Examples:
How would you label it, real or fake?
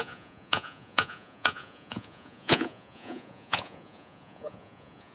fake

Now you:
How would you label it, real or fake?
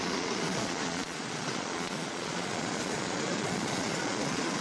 fake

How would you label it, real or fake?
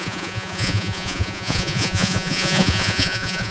fake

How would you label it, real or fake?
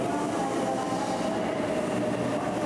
real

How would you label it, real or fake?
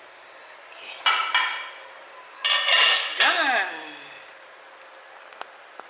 real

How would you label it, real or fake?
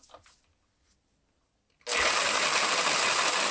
real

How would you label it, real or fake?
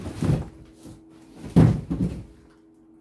real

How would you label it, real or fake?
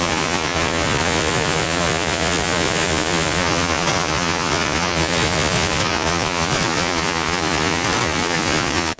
fake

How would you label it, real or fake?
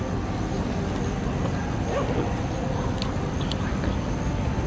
real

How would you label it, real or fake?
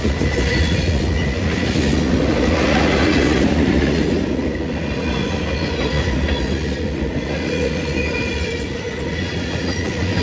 fake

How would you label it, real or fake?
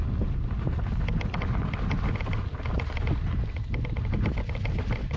real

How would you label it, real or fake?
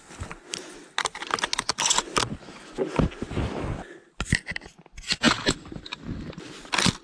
real